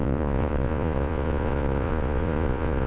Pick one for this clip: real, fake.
fake